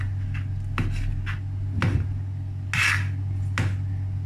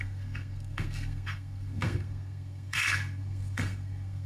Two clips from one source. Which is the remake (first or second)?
second